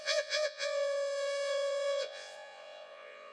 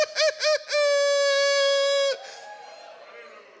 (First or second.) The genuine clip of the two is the second